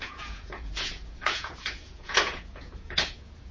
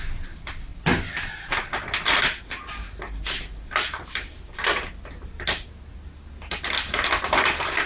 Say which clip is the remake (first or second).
first